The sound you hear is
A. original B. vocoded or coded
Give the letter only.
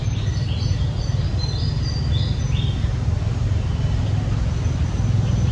A